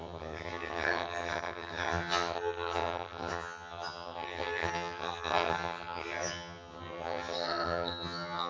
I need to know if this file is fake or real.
fake